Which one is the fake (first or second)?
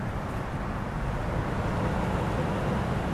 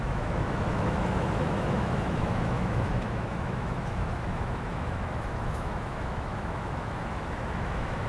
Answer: second